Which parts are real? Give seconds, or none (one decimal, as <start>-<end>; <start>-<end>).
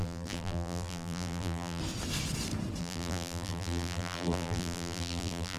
1.8-2.8